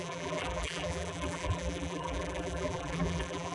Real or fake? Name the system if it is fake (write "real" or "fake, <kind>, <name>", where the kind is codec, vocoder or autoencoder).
fake, vocoder, BigVGAN v2